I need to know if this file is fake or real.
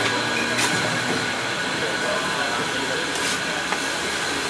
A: real